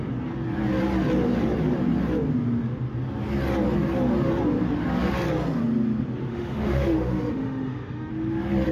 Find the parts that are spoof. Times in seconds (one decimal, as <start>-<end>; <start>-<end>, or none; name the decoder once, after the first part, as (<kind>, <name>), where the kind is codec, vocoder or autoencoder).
6.3-8.1 (autoencoder, DAC-VAE)

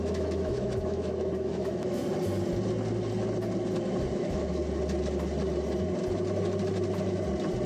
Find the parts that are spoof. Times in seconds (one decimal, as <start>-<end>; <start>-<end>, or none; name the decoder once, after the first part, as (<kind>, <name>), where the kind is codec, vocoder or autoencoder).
0.0-2.0 (autoencoder, DAC-VAE); 4.1-4.6